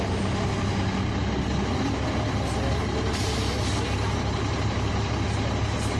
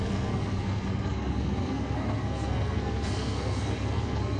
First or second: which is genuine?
first